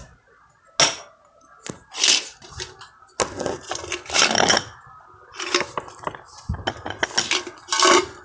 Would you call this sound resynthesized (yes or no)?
no